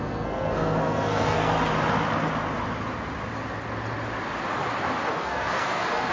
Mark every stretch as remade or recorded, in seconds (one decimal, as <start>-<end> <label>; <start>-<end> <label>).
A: 0.0-1.5 remade; 1.5-5.1 recorded; 5.1-6.1 remade